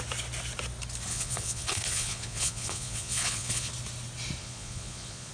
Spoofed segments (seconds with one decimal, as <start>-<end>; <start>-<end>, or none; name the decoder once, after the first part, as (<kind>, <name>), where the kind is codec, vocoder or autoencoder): 1.1-3.7 (vocoder, Vocos); 4.4-5.3